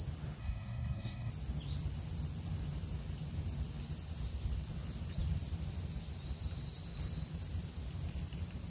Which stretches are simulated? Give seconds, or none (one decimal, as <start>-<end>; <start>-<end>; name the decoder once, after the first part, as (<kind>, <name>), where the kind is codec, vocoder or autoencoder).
0.4-1.3 (codec, SNAC)